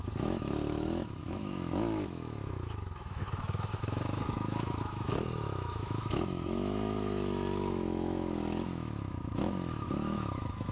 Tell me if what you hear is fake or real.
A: fake